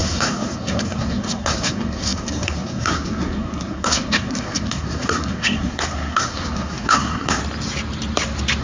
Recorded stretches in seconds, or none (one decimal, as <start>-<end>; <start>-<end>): 7.4-8.6